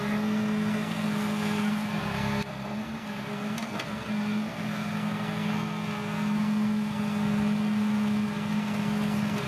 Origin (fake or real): fake